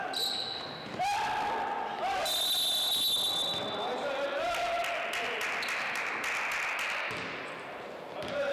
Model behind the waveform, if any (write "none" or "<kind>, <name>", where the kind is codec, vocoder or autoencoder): none